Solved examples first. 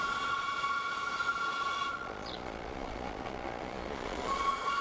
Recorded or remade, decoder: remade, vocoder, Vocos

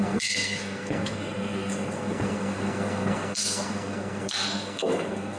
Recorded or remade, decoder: remade, codec, SNAC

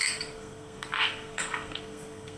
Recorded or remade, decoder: remade, codec, SNAC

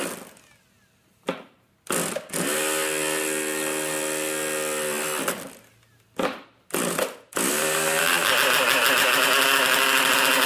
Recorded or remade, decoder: recorded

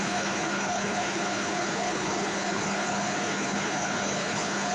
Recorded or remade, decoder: remade, codec, HILCodec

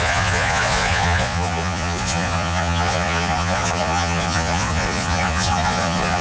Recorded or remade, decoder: remade, vocoder, Vocos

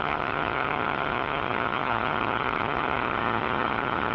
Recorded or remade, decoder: remade, vocoder, HiFi-GAN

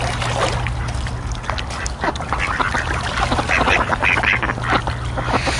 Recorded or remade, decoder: recorded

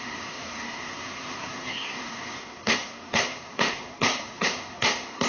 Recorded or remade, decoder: remade, codec, SNAC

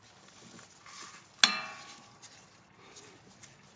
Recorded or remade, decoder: recorded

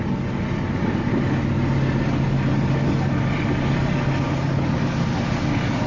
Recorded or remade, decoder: recorded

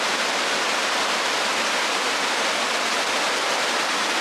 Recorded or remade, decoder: recorded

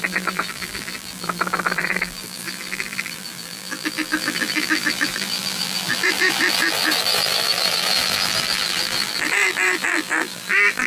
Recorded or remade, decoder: remade, vocoder, BigVGAN v2